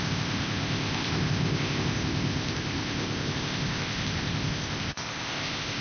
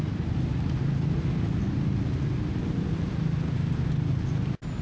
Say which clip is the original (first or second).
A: second